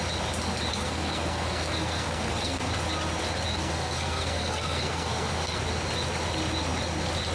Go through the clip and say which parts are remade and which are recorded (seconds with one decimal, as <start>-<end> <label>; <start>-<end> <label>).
0.0-0.7 recorded; 0.7-2.7 remade; 2.7-3.5 recorded; 3.5-5.6 remade; 5.6-7.3 recorded